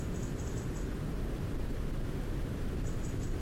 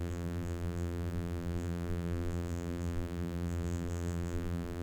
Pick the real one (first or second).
first